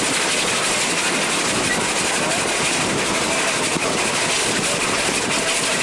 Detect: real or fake real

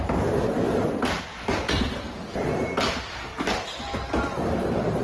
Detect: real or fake real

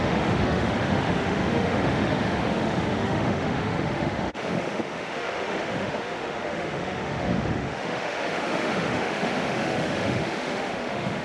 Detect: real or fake fake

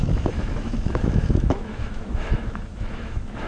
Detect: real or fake fake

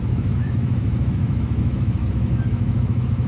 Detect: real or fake fake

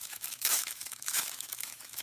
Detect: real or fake fake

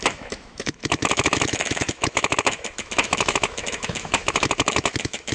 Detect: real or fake fake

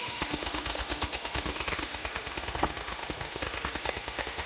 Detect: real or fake fake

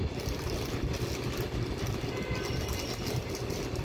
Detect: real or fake real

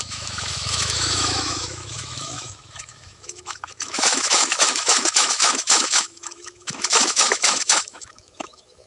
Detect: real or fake fake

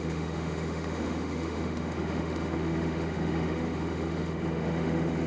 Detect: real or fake fake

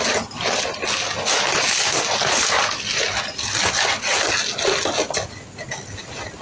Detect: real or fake real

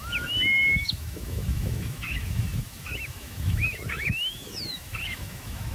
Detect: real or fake fake